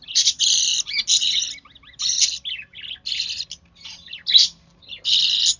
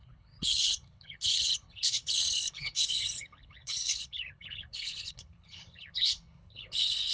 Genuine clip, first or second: first